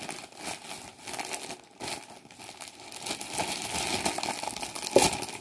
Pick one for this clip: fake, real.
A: real